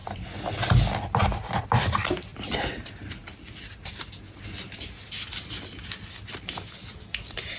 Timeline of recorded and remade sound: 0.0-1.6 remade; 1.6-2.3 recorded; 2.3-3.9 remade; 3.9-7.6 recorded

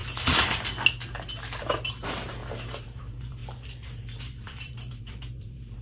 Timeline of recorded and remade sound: 0.0-1.6 recorded; 1.6-5.8 remade

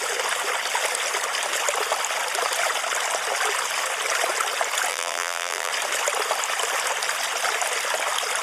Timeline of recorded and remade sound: 0.0-4.9 recorded; 4.9-5.7 remade; 5.7-8.4 recorded